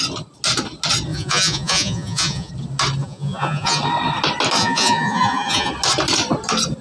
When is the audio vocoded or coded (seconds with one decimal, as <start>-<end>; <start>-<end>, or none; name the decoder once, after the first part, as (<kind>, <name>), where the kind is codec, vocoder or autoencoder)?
1.1-2.5 (vocoder, Vocos); 3.0-3.8; 4.6-5.7